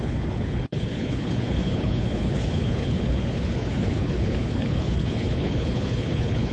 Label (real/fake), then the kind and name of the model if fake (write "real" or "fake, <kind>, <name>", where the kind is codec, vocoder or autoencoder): fake, codec, HILCodec